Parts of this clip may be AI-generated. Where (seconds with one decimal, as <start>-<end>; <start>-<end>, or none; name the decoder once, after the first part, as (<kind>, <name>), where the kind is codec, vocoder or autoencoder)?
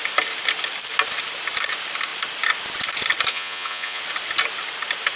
3.3-4.0 (vocoder, Vocos)